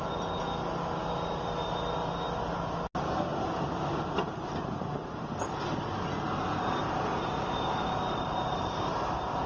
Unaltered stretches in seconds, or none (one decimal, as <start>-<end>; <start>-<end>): 0.0-9.5